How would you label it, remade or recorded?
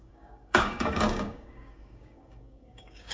remade